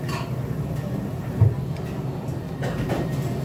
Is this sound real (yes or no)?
yes